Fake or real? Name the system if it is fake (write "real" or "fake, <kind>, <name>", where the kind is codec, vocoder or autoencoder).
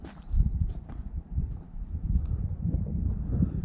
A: real